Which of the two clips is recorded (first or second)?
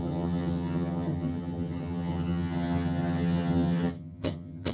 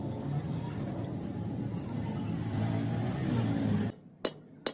second